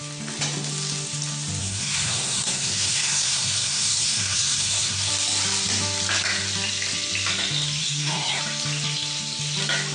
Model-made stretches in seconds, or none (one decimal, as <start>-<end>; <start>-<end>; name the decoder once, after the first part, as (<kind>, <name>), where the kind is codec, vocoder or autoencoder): 1.6-5.1 (codec, SNAC); 7.8-8.4